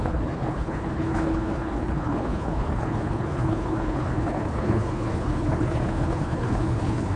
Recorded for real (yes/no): no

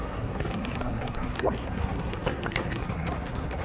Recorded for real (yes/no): no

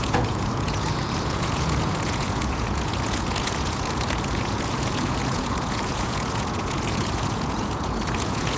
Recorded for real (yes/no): no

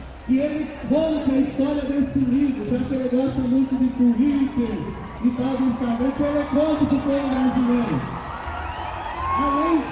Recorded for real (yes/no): yes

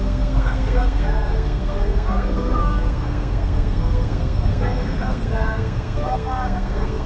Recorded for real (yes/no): no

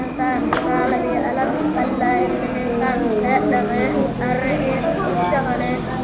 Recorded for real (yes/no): yes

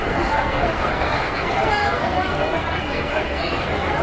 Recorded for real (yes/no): no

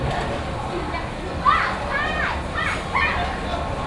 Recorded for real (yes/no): yes